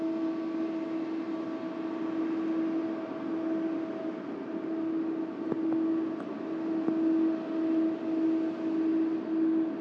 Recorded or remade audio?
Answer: recorded